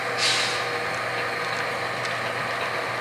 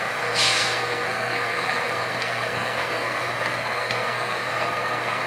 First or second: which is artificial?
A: second